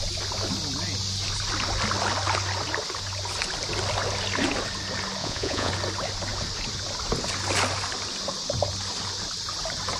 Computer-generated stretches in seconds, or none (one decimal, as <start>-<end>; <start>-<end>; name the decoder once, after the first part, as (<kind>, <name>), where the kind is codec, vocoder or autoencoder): 5.2-5.7 (vocoder, Vocos)